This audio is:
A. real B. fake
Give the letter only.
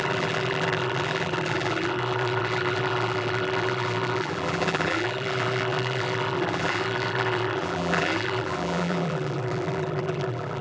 B